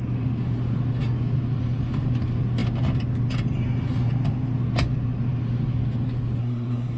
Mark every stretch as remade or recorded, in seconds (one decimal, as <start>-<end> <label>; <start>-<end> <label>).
0.0-6.4 recorded; 6.4-7.0 remade